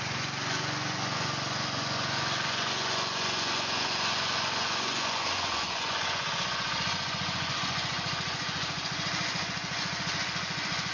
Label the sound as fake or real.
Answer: fake